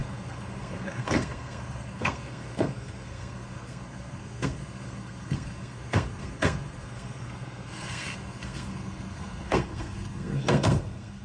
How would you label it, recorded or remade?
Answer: remade